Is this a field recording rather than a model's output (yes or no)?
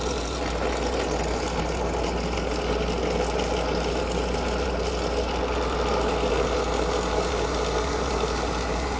yes